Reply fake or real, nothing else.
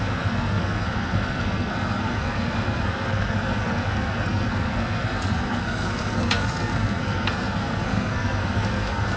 fake